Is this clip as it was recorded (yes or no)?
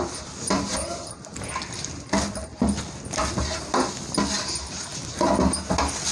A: yes